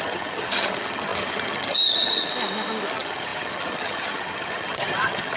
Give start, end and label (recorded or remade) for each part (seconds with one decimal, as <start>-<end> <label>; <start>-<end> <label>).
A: 0.0-2.3 remade; 2.3-2.9 recorded; 2.9-5.4 remade